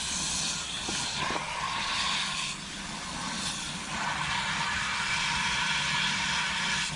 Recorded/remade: recorded